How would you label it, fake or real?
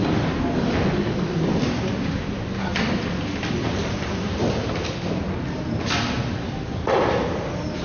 real